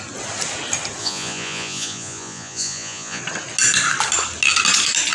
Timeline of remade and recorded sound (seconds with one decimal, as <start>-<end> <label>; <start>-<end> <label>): 0.0-1.0 recorded; 1.0-3.2 remade; 3.2-5.1 recorded